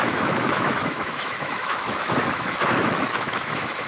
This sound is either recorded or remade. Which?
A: remade